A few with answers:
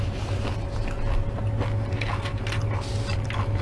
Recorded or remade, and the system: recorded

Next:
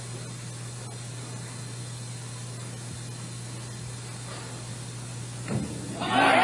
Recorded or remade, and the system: recorded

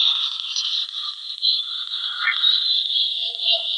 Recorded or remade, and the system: recorded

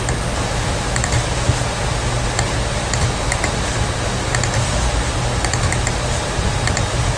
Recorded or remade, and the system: recorded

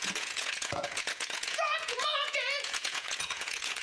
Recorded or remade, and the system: remade, vocoder, Vocos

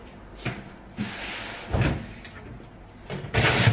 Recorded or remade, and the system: recorded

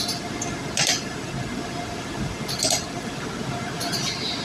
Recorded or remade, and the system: recorded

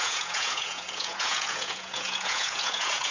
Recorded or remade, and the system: remade, vocoder, Vocos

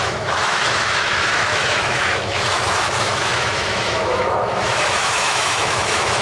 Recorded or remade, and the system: remade, autoencoder, DAC-VAE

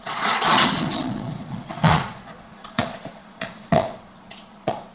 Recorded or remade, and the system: remade, vocoder, Vocos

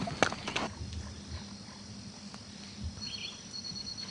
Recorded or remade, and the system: recorded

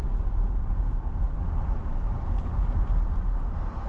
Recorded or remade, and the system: recorded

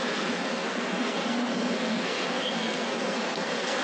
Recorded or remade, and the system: remade, codec, SNAC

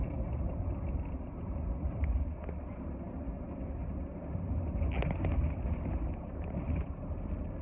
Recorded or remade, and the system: recorded